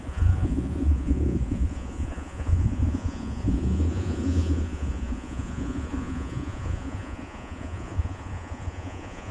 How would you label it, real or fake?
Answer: fake